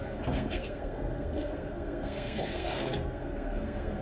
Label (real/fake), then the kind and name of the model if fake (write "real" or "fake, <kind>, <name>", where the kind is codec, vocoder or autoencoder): fake, codec, SNAC